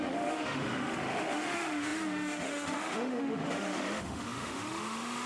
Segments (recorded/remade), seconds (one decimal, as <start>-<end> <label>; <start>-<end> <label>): 0.0-5.3 remade